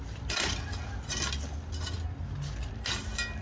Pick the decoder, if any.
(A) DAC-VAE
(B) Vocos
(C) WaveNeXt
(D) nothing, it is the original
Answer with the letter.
D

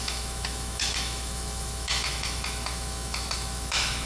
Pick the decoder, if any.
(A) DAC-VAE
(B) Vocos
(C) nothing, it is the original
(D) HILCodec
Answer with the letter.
A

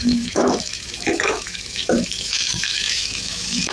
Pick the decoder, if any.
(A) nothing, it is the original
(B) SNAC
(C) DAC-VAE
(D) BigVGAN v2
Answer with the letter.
C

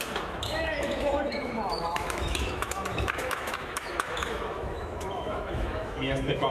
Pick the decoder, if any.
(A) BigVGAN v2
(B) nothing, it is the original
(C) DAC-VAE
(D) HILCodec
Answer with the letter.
C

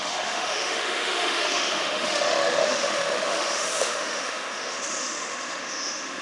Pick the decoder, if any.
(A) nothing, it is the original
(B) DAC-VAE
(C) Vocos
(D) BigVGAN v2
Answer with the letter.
B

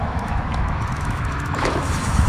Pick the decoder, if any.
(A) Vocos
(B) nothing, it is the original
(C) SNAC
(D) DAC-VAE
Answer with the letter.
D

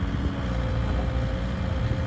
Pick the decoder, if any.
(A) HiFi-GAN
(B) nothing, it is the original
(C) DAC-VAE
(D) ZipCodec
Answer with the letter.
B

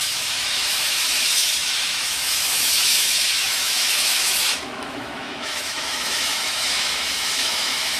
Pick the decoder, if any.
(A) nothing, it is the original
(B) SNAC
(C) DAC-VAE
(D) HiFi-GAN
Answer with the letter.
C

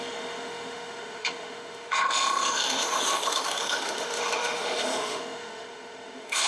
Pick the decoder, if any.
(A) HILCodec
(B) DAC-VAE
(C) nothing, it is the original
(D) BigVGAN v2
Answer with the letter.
B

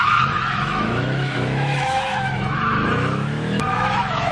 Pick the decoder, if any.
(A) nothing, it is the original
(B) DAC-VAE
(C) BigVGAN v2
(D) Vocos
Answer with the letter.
B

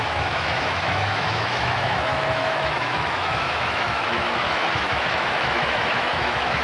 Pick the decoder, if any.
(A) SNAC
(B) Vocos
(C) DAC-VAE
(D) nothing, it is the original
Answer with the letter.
C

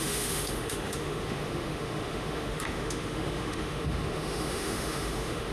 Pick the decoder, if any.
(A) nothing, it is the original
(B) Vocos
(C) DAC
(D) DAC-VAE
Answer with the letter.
D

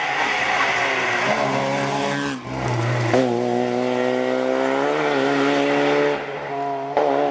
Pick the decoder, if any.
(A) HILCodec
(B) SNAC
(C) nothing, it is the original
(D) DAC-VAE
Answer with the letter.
C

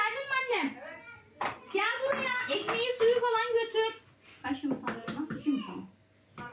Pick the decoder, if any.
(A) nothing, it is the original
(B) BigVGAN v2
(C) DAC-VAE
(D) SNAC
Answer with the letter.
A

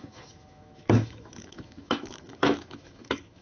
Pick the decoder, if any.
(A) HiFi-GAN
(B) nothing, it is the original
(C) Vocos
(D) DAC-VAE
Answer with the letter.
D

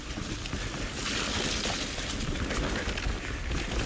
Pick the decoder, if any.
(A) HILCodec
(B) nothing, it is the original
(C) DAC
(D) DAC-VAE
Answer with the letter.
B